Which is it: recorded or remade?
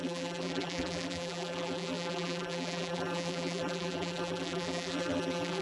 remade